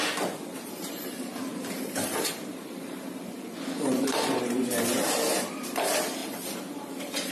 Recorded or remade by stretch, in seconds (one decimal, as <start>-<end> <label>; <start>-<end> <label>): 0.0-0.5 recorded; 0.5-4.4 remade; 4.4-6.2 recorded; 6.2-7.3 remade